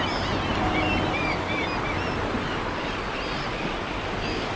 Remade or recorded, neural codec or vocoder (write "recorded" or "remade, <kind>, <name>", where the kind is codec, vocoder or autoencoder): recorded